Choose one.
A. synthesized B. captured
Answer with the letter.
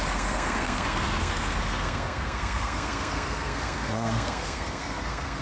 A